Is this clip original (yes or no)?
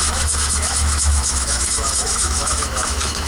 no